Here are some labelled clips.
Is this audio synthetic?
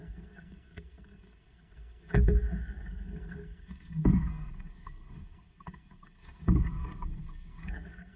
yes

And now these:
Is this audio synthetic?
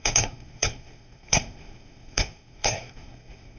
yes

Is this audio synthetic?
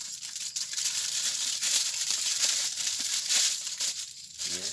yes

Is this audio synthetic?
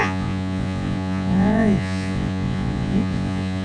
yes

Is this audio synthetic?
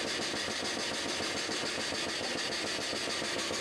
no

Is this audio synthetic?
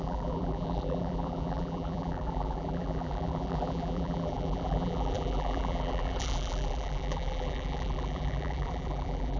yes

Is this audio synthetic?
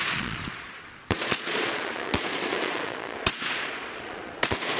yes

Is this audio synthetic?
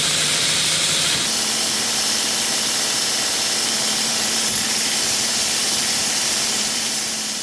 yes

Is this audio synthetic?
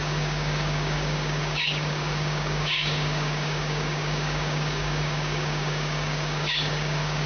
yes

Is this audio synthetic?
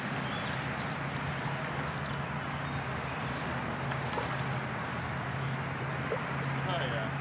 no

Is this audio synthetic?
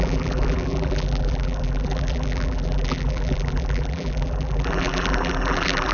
yes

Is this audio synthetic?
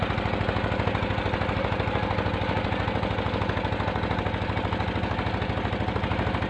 no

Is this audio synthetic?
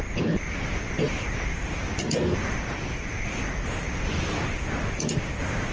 no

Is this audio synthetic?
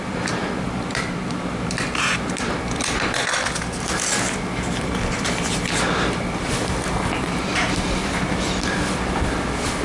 yes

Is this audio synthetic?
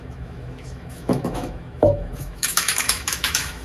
yes